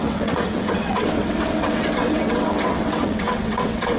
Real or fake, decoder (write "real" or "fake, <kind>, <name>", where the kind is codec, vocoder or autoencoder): fake, vocoder, WaveNeXt